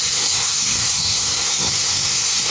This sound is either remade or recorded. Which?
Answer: remade